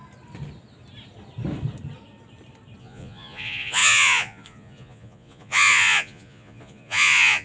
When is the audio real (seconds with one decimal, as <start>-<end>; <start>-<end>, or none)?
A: 0.0-2.8

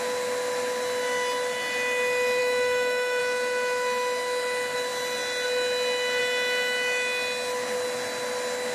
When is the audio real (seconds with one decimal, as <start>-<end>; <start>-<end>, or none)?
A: 0.0-2.4; 3.2-8.7

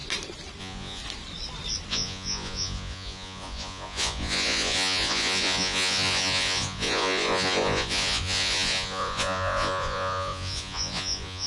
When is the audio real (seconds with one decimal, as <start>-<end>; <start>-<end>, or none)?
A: 0.0-0.6; 1.0-1.9

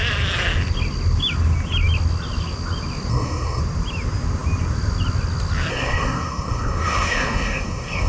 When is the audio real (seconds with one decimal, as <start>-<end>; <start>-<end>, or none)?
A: 0.0-3.1; 3.6-5.7